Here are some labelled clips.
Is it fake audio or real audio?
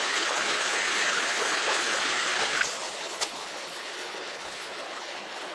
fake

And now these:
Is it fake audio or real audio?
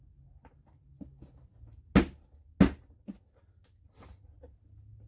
real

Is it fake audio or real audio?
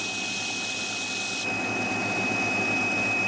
real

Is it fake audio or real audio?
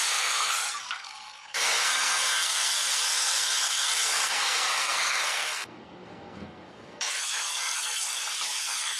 fake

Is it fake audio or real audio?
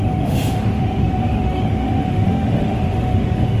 fake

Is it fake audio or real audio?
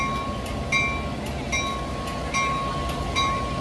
real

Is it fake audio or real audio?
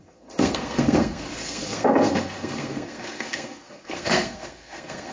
fake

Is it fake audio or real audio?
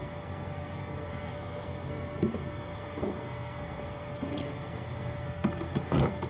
fake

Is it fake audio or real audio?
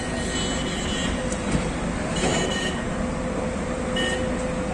real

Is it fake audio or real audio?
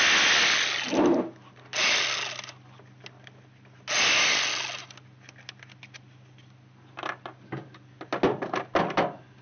real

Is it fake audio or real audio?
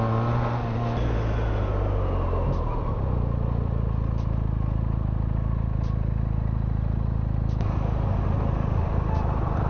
real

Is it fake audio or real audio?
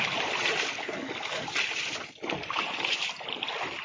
real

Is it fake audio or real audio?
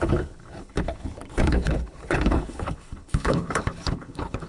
fake